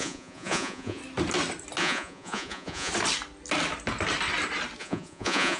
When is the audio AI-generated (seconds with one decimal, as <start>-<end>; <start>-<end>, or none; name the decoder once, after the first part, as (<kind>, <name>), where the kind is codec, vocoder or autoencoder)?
0.0-1.0 (vocoder, Vocos); 1.8-2.9; 4.8-5.6